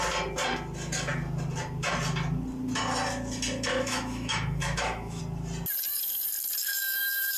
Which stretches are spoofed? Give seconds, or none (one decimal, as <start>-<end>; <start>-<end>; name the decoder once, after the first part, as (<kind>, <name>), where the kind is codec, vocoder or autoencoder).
3.7-5.2 (autoencoder, DAC-VAE); 6.7-7.4